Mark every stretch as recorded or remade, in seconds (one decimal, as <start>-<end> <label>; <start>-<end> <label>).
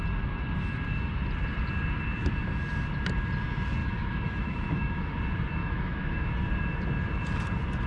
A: 0.0-3.8 recorded; 3.8-5.1 remade; 5.1-5.6 recorded; 5.6-6.3 remade; 6.3-7.9 recorded